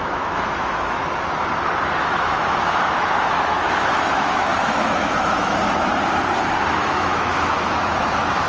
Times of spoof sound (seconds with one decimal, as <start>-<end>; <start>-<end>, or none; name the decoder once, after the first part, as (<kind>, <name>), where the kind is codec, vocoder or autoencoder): 0.0-1.0 (autoencoder, DAC-VAE); 2.0-5.6; 6.7-8.5